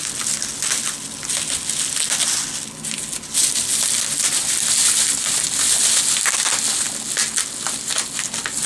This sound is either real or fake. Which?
real